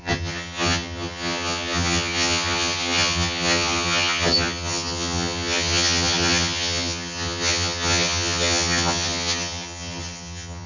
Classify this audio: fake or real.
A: fake